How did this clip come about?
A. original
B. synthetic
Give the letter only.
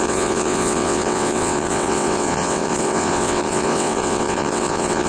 B